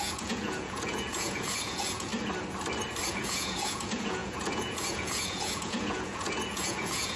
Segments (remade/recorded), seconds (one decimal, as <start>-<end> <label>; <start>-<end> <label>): 0.0-2.1 remade; 2.1-3.1 recorded; 3.1-7.2 remade